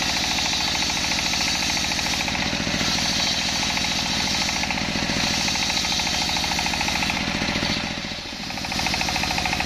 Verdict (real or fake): real